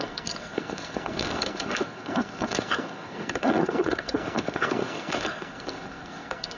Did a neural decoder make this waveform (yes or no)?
yes